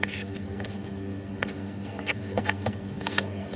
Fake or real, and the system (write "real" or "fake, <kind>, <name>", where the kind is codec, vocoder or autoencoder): fake, codec, SNAC